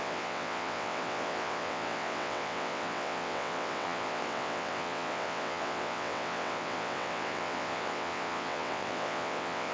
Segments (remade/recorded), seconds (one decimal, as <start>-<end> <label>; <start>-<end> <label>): 0.0-9.7 remade